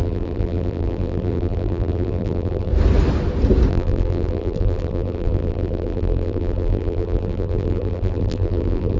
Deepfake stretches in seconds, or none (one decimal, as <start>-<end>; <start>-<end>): 0.0-2.7; 3.7-9.0